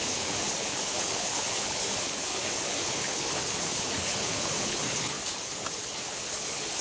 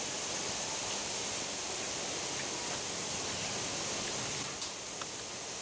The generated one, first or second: first